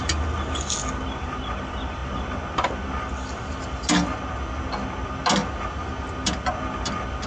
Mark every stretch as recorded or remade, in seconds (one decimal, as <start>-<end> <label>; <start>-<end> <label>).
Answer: 0.0-7.3 recorded